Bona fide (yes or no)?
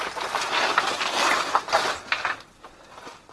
yes